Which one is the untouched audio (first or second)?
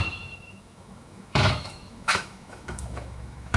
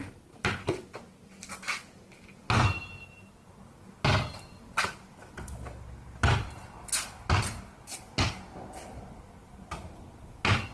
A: second